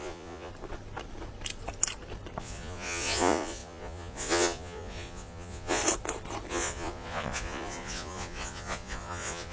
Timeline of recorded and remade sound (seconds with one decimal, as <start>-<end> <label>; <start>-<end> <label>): 0.0-0.5 remade; 0.5-2.4 recorded; 2.4-5.8 remade; 5.8-6.5 recorded; 6.5-9.5 remade